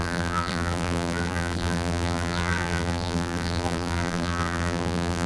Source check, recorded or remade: remade